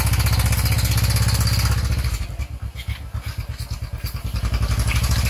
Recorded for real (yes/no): yes